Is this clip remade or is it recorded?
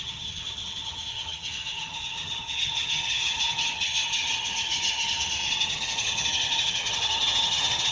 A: remade